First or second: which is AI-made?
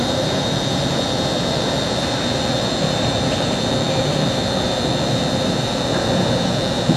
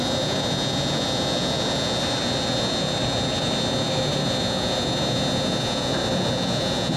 first